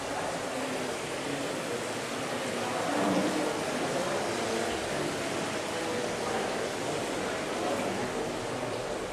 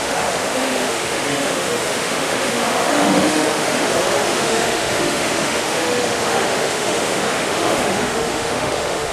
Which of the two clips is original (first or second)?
first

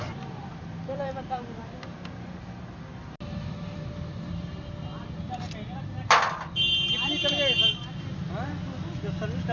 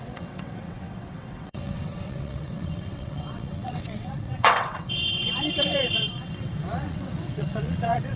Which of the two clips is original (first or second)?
first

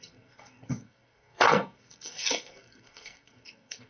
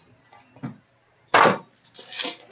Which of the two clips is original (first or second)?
second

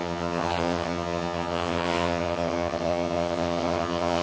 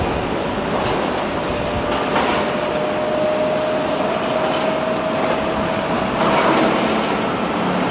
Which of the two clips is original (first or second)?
second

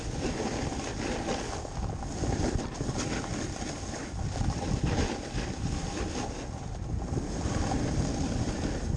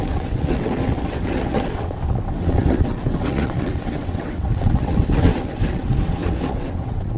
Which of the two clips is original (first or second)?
first